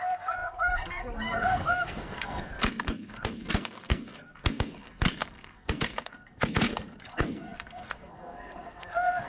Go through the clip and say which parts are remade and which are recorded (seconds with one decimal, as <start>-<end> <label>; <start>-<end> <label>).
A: 0.0-9.3 remade

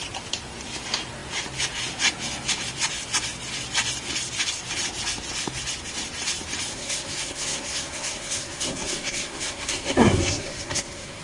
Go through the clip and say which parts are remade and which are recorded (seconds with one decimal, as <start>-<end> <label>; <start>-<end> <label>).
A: 0.0-6.7 recorded; 6.7-11.2 remade

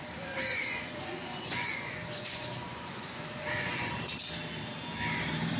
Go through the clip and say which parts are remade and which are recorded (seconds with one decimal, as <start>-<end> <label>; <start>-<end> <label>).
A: 0.0-0.5 recorded; 0.5-3.9 remade; 3.9-5.6 recorded

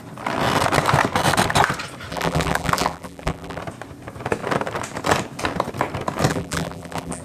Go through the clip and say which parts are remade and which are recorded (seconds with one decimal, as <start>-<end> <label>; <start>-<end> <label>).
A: 0.0-2.1 recorded; 2.1-3.6 remade; 3.6-6.3 recorded; 6.3-7.2 remade